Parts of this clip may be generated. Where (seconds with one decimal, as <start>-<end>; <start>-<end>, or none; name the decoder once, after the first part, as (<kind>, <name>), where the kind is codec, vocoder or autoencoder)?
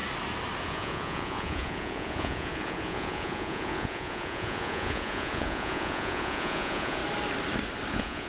0.6-7.0 (vocoder, Vocos); 7.9-8.3